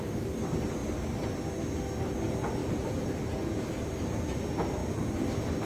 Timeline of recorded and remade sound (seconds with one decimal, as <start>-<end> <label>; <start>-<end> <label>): 0.0-2.6 recorded; 2.6-3.9 remade; 3.9-5.7 recorded